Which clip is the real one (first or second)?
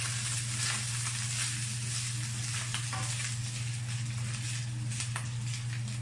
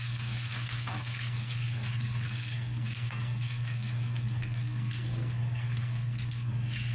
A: first